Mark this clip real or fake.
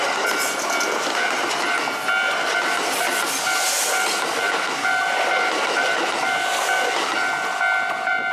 fake